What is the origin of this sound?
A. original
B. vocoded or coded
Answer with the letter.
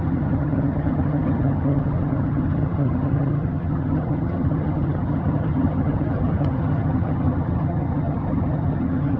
B